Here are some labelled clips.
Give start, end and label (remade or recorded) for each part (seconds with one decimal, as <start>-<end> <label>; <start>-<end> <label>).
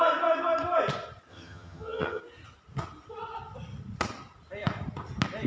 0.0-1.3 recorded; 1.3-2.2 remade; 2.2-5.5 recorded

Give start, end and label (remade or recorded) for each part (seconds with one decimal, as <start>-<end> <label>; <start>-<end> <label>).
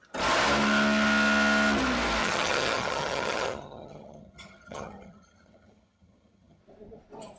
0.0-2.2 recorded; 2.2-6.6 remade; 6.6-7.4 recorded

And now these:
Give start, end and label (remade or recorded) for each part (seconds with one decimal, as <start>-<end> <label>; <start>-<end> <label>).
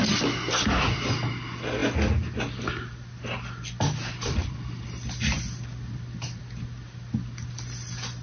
0.0-8.2 recorded